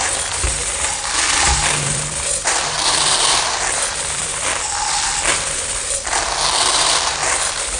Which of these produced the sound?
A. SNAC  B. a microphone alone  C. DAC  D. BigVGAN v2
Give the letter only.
D